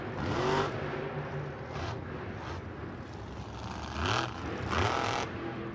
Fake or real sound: real